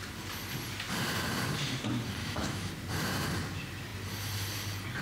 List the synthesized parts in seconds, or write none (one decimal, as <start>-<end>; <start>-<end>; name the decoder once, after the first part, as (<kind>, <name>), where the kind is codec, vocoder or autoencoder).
2.2-2.7 (autoencoder, DAC-VAE)